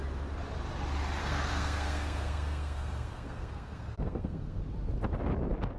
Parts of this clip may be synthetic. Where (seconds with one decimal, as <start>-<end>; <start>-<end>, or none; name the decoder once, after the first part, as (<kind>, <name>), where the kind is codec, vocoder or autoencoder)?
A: 1.2-4.6 (codec, SNAC)